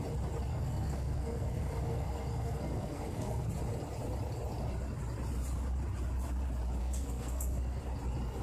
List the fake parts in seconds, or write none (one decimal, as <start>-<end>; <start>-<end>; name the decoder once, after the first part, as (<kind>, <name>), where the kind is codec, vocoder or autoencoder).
0.5-3.5 (codec, SNAC); 6.8-7.8